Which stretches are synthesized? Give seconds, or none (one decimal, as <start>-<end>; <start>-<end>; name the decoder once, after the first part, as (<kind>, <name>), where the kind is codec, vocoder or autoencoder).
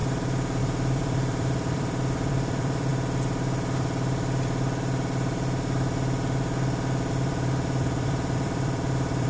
0.6-2.9 (vocoder, BigVGAN v2); 7.1-9.3